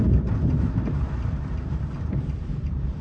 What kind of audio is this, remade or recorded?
remade